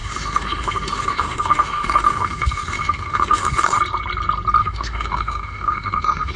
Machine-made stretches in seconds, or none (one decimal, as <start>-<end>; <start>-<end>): 0.0-3.8; 4.6-6.4